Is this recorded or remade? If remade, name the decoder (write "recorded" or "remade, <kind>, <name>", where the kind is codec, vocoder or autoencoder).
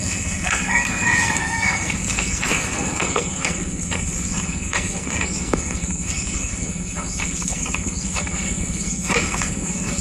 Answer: remade, codec, SNAC